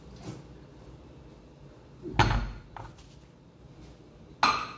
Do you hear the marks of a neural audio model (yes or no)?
no